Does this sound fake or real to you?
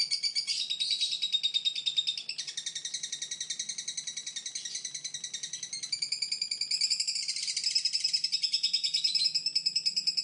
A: real